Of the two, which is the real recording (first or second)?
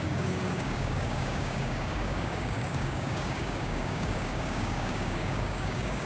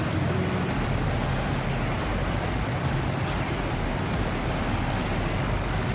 second